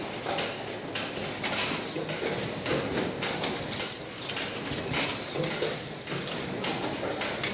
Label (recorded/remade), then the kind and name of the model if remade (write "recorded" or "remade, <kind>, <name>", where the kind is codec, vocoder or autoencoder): recorded